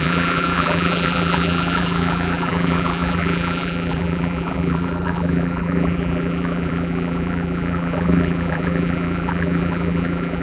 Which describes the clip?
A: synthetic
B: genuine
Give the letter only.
A